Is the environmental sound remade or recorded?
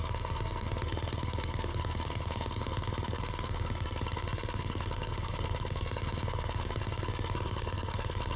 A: remade